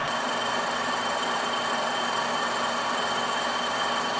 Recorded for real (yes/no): yes